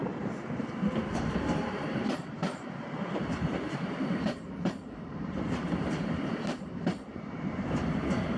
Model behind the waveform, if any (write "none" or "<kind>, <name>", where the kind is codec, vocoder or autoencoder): vocoder, BigVGAN v2